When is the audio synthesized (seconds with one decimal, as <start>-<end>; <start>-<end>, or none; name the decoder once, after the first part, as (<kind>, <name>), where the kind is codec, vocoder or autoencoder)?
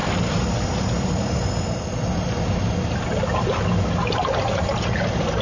none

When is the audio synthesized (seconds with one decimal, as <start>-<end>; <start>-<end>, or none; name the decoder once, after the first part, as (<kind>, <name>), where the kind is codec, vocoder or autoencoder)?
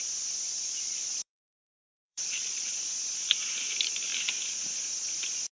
0.5-2.7 (vocoder, Vocos)